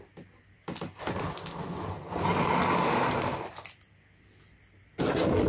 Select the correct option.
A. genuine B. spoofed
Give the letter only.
A